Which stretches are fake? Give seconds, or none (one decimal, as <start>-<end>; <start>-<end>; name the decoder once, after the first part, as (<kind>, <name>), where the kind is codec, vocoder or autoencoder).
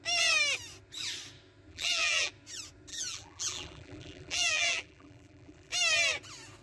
1.7-2.3 (vocoder, BigVGAN v2); 2.9-5.7